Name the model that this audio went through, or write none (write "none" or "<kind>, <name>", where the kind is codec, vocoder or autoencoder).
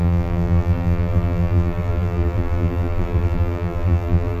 vocoder, BigVGAN v2